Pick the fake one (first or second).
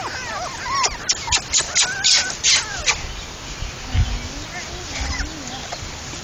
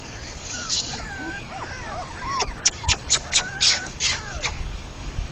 second